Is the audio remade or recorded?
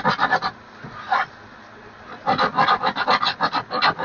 recorded